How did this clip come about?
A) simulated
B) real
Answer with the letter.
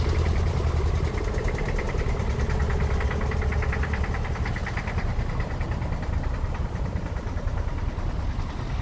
B